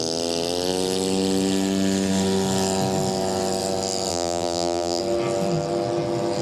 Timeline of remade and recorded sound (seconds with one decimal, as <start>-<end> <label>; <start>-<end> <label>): 0.0-4.1 recorded; 4.1-5.0 remade; 5.0-6.4 recorded